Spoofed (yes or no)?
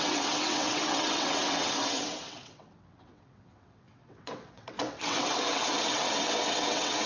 yes